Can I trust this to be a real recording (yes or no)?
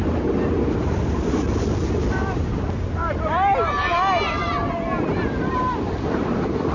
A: yes